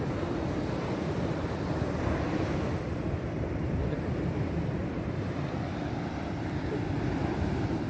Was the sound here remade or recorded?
remade